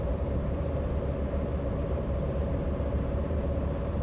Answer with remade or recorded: remade